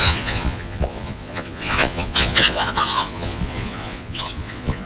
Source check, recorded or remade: remade